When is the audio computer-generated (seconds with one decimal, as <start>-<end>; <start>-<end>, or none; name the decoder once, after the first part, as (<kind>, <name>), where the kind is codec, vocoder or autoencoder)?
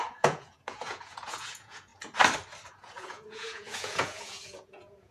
0.0-1.9 (vocoder, Vocos); 2.7-5.1